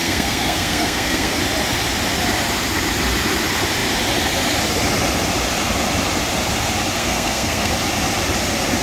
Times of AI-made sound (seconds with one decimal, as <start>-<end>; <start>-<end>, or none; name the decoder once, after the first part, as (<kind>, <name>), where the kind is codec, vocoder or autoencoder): 0.0-1.4 (codec, SNAC); 7.0-7.7